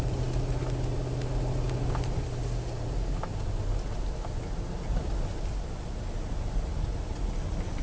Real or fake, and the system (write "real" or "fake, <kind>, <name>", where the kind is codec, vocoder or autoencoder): real